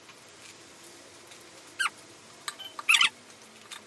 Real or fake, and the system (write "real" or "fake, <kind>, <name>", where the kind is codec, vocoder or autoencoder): real